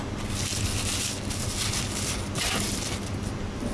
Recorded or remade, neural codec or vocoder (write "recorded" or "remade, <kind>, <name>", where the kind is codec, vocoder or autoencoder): recorded